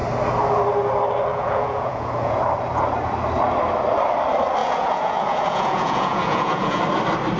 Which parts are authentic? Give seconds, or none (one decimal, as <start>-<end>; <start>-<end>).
0.0-1.3; 2.4-4.6; 6.8-7.4